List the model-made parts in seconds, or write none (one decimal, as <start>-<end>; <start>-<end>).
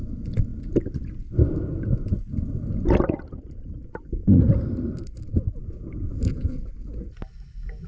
0.5-3.6; 4.2-5.6